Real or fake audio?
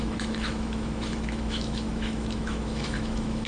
fake